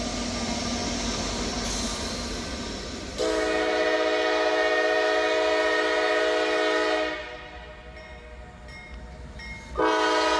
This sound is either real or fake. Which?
real